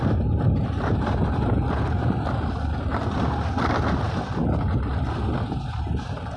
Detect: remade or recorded recorded